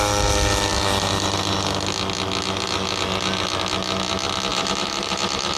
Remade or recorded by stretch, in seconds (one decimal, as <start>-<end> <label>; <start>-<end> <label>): 0.0-4.5 recorded; 4.5-5.6 remade